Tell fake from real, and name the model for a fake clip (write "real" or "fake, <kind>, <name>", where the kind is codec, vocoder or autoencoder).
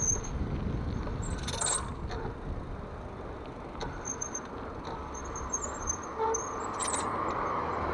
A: real